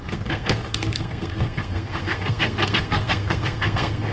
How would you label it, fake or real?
fake